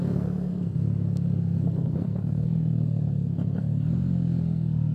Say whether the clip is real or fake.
fake